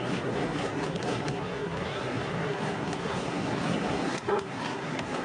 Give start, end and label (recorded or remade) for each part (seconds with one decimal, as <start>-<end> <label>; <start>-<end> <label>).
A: 0.0-5.2 remade